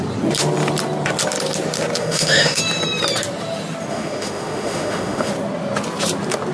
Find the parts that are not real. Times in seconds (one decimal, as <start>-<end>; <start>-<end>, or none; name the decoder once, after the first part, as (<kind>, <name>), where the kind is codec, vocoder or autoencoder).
2.0-2.6 (autoencoder, DAC-VAE); 3.9-5.3